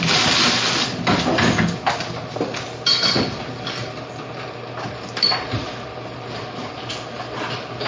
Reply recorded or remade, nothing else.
recorded